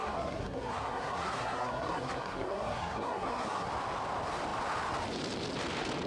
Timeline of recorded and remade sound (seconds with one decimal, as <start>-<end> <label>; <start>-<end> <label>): 0.0-3.7 remade; 3.7-6.1 recorded